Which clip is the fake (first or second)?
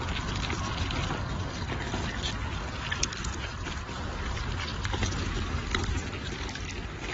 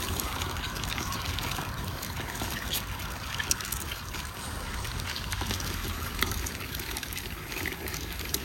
second